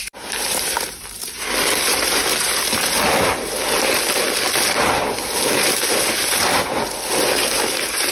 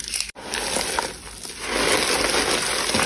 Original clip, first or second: second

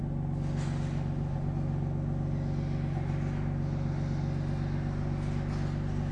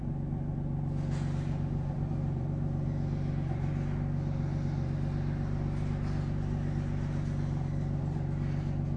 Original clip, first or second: first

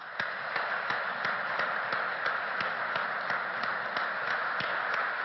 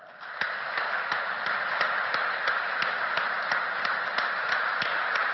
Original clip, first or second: first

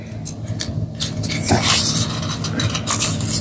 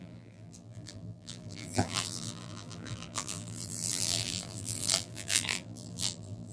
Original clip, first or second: first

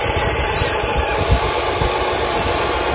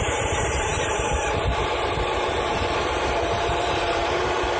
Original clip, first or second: first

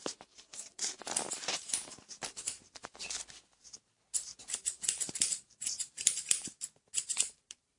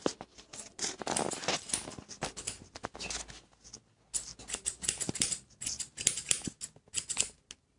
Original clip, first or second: second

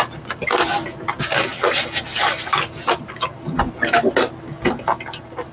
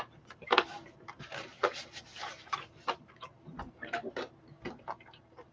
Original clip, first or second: first